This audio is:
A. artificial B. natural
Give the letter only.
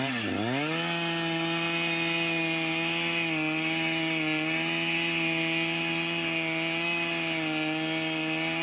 B